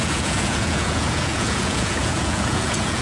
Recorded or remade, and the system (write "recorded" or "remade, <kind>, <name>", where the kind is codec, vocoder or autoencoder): remade, vocoder, Vocos